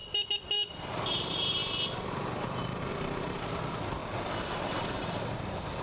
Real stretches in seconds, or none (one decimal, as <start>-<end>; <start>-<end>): 0.0-1.0; 1.6-2.9; 4.0-4.7